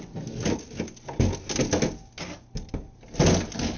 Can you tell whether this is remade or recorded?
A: recorded